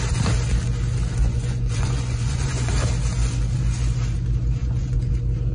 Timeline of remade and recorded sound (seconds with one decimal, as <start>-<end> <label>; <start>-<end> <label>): 0.0-1.2 recorded; 1.2-2.7 remade; 2.7-4.6 recorded; 4.6-5.1 remade; 5.1-5.5 recorded